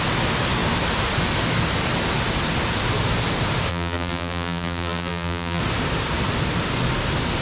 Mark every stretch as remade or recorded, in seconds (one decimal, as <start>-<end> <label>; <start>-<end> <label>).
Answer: 0.0-3.7 recorded; 3.7-5.6 remade; 5.6-7.4 recorded